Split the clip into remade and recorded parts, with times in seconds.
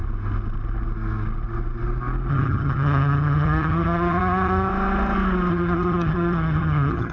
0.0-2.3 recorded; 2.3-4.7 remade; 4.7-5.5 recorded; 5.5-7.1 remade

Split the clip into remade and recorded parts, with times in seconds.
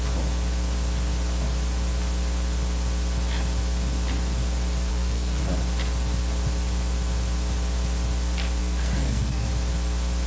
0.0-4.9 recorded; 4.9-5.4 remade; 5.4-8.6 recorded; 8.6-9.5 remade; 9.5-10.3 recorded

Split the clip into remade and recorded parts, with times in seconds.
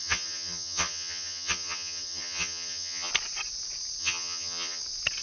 0.0-3.1 remade; 3.1-4.0 recorded; 4.0-4.8 remade; 4.8-5.2 recorded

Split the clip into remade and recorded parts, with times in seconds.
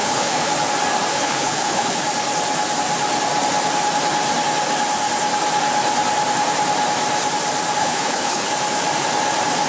0.0-0.5 remade; 0.5-1.1 recorded; 1.1-2.0 remade; 2.0-7.8 recorded; 7.8-8.5 remade; 8.5-9.7 recorded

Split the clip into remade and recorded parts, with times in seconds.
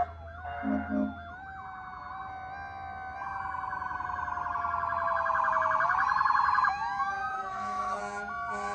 0.0-7.3 recorded; 7.3-8.0 remade; 8.0-8.7 recorded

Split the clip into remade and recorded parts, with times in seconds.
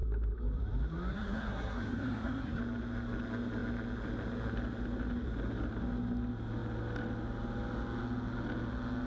0.0-1.1 recorded; 1.1-2.6 remade; 2.6-9.1 recorded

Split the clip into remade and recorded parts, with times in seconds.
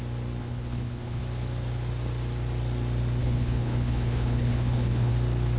0.0-0.4 recorded; 0.4-1.2 remade; 1.2-3.2 recorded; 3.2-5.1 remade; 5.1-5.6 recorded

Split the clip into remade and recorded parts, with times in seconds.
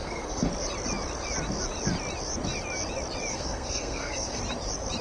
0.0-0.5 remade; 0.5-3.3 recorded; 3.3-4.4 remade; 4.4-5.0 recorded